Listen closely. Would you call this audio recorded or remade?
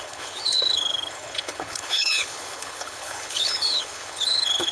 remade